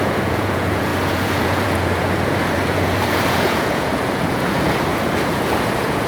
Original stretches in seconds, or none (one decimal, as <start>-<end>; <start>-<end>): none